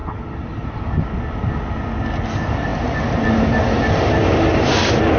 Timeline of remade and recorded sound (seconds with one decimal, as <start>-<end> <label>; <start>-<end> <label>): 0.0-5.2 recorded